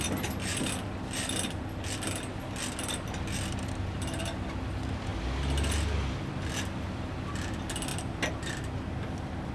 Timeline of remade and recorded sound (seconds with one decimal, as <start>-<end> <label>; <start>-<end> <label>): 0.0-9.5 recorded